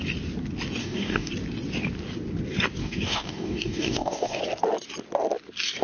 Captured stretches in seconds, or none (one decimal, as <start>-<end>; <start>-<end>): 0.0-0.8; 1.3-2.8; 4.4-5.8